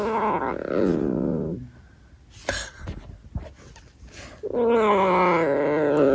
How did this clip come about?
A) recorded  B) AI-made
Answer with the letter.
A